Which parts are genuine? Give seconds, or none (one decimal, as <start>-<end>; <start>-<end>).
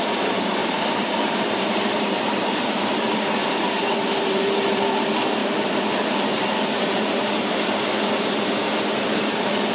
0.0-0.6; 5.0-5.4; 7.8-9.7